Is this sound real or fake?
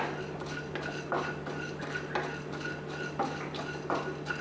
real